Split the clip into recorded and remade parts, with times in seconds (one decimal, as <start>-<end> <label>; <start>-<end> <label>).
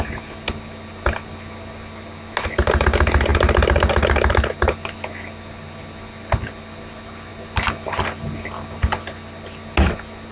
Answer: 0.0-10.3 recorded